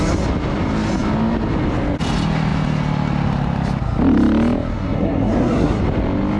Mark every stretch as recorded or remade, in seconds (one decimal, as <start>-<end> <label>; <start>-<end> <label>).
0.0-4.7 recorded; 4.7-5.8 remade; 5.8-6.4 recorded